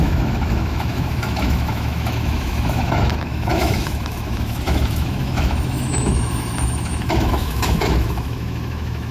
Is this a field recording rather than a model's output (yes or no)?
no